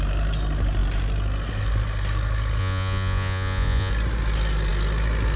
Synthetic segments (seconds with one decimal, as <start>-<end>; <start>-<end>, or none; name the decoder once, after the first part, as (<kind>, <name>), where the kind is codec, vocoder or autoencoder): 2.6-3.9 (vocoder, Vocos)